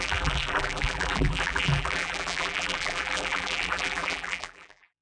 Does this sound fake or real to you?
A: fake